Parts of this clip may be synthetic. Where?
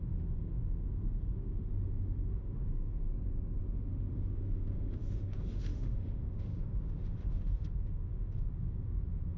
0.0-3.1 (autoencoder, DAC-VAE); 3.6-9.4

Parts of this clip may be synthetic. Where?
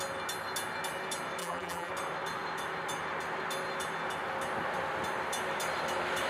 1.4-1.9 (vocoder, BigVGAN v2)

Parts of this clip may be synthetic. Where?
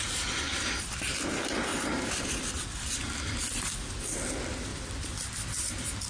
none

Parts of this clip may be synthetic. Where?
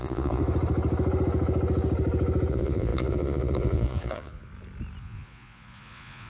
0.0-0.4 (vocoder, Vocos); 2.5-4.5; 5.0-6.3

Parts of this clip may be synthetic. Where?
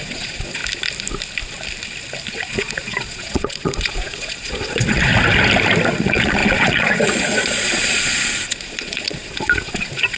0.0-0.6 (vocoder, Vocos); 2.3-5.1; 5.9-10.2